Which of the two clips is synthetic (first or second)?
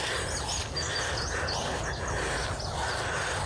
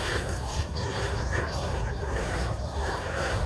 second